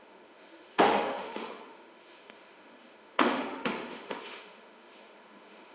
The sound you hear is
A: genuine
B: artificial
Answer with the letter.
B